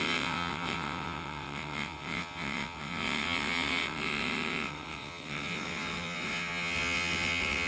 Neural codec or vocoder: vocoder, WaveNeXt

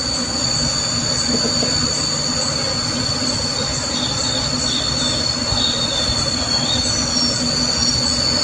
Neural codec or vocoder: none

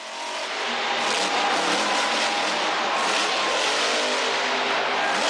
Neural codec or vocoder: none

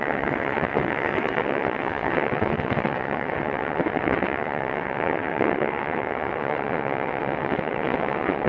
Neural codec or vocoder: vocoder, WaveNeXt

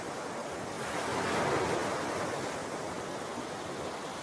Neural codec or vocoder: none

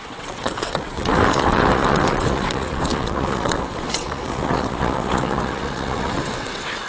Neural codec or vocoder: vocoder, WaveNeXt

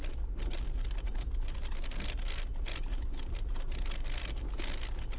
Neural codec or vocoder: none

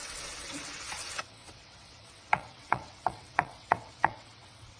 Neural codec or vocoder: vocoder, WaveNeXt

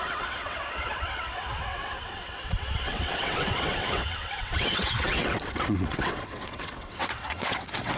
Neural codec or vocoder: vocoder, WaveNeXt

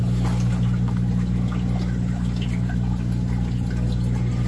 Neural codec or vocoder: none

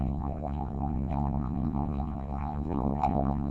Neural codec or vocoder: vocoder, WaveNeXt